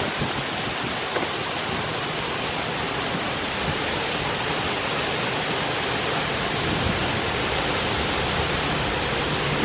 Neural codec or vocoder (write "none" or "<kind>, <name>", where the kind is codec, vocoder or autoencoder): none